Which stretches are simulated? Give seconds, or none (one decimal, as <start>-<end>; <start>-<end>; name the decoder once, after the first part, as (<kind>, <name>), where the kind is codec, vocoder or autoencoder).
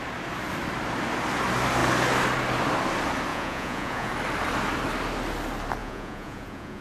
3.3-4.1 (vocoder, Vocos); 5.8-6.8